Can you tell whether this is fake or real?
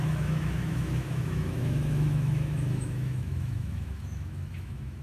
fake